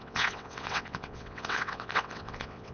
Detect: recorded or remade remade